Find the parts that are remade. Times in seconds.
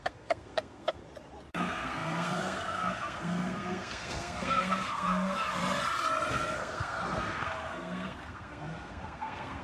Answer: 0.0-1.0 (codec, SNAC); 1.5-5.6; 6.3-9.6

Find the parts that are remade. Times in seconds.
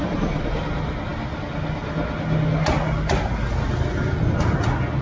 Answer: 0.0-0.6 (vocoder, BigVGAN v2)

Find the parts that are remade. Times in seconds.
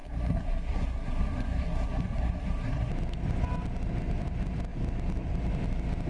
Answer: 0.0-2.9 (codec, SNAC)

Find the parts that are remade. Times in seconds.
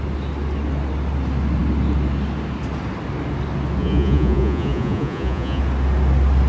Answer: 3.8-5.6 (vocoder, Vocos)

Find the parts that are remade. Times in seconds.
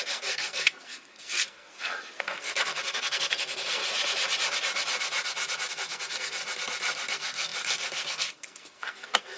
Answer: 0.0-3.8 (codec, SNAC); 5.7-6.4; 7.1-9.4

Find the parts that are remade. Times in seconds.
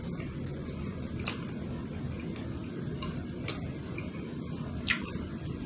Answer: 0.5-1.1 (vocoder, Vocos)